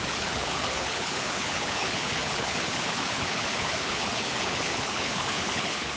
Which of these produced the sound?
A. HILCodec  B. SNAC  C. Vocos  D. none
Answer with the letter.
A